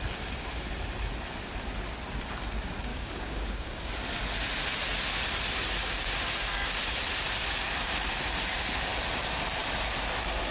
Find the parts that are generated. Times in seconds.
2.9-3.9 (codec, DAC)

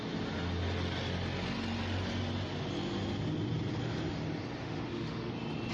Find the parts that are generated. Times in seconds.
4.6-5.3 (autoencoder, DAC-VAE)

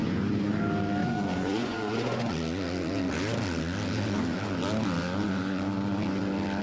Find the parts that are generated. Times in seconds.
0.0-0.6 (vocoder, Vocos); 1.0-2.3

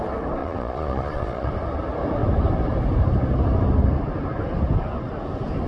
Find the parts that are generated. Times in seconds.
0.4-1.5 (vocoder, Vocos)

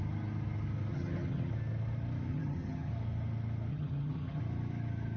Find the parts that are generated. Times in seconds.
0.9-1.5 (vocoder, HiFi-GAN); 2.3-2.9; 3.7-4.4